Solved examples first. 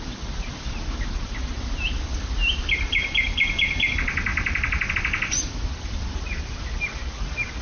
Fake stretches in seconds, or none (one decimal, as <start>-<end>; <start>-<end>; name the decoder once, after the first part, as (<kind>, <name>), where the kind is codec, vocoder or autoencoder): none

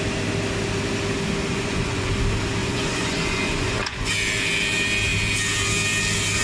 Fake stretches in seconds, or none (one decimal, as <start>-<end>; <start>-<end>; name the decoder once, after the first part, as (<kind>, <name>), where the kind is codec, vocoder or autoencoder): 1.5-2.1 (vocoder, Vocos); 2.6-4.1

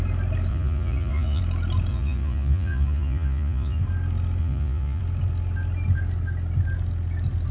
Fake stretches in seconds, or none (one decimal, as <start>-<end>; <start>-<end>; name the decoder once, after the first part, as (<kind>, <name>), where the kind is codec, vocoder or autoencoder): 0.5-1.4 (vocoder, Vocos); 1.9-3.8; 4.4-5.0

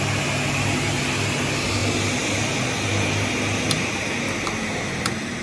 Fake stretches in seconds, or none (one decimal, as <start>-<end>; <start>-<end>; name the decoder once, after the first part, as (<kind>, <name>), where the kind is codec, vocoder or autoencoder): none

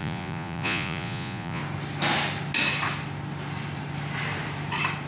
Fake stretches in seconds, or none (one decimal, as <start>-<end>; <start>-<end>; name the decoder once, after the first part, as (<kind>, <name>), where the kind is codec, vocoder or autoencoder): 0.0-1.6 (vocoder, Vocos)

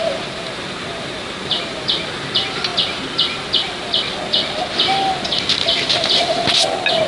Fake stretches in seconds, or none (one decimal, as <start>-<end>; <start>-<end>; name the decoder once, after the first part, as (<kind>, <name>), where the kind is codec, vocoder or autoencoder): none

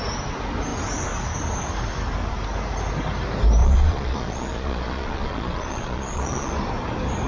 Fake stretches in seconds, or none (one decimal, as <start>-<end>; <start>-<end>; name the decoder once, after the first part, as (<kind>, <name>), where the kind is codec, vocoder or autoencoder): 3.6-6.5 (vocoder, Vocos)

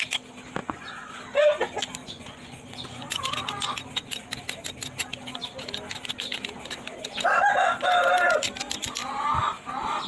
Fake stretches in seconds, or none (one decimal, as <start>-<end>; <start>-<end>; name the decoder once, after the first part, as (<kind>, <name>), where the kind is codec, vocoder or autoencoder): 0.6-1.2 (vocoder, Vocos); 2.0-3.3